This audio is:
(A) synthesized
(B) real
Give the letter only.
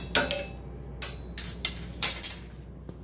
B